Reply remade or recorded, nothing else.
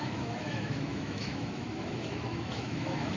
remade